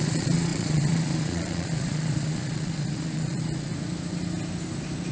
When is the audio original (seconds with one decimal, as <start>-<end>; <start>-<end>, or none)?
3.7-5.1